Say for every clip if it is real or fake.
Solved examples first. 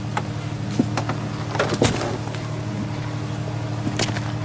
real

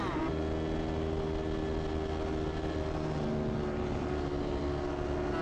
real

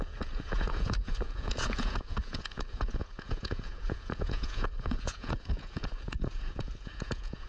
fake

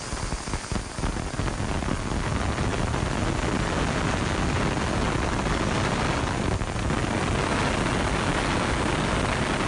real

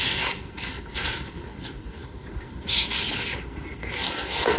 fake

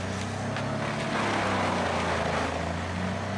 real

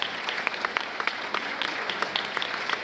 fake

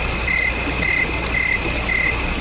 real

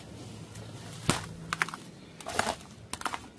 real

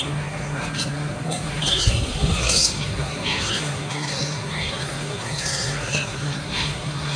fake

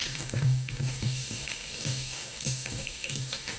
fake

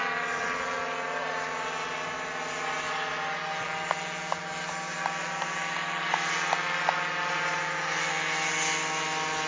real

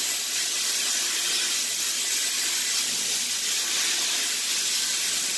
real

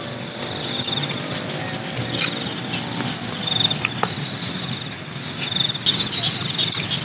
real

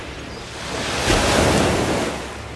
real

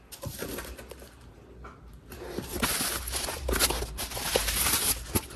real